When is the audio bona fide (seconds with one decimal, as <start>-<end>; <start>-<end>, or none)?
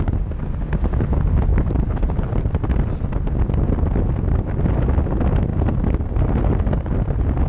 0.0-1.5; 2.5-7.5